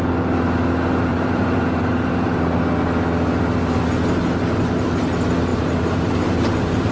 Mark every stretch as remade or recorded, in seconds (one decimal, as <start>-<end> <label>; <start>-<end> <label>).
0.0-1.1 recorded; 1.1-2.1 remade; 2.1-5.5 recorded; 5.5-6.9 remade